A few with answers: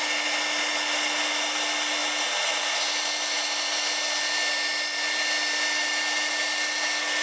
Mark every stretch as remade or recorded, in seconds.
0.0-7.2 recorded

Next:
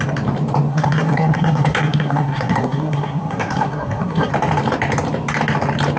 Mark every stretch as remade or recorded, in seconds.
0.0-0.7 recorded; 0.7-4.3 remade; 4.3-6.0 recorded